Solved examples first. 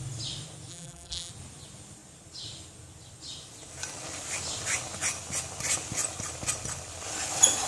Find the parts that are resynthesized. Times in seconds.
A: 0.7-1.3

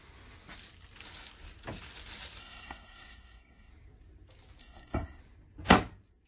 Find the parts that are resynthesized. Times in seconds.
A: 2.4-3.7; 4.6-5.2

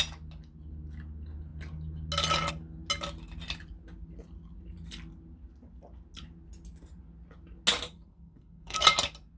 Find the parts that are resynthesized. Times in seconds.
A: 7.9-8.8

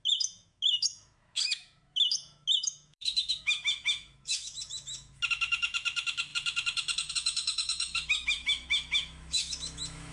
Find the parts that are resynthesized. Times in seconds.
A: 0.0-10.1